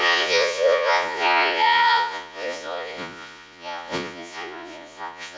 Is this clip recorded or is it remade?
remade